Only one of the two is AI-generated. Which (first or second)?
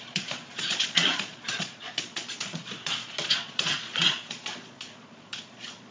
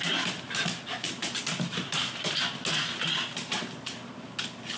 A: first